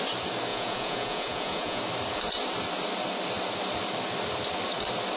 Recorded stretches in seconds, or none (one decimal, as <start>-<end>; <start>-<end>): 0.0-0.5; 1.8-5.2